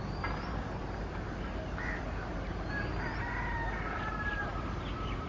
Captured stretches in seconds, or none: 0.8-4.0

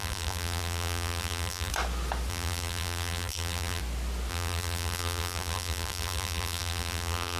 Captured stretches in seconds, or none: 1.7-2.3; 3.8-4.3

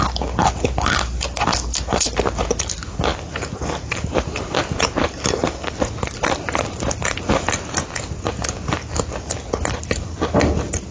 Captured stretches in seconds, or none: 0.0-10.9